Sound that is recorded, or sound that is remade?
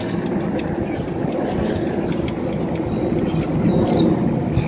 recorded